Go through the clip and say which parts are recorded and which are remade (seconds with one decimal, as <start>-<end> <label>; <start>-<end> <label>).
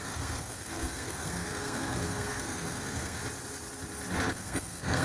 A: 0.0-3.2 remade; 3.2-4.3 recorded; 4.3-5.0 remade